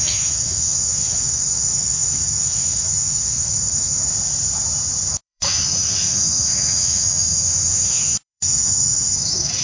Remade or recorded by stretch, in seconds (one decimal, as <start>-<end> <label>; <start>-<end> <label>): 0.0-4.1 remade; 4.1-5.1 recorded; 5.1-9.6 remade